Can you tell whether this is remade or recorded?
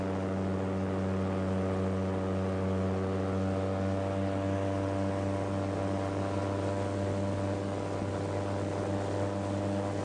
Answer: recorded